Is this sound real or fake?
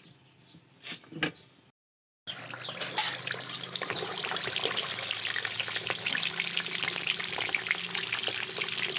real